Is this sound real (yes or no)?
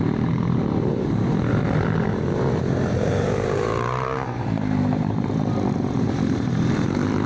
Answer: no